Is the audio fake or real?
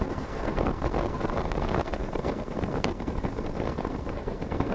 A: fake